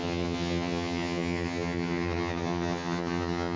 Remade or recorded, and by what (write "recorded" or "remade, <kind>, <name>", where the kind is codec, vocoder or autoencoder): remade, vocoder, HiFi-GAN